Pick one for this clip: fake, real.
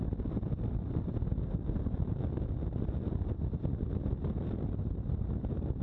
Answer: real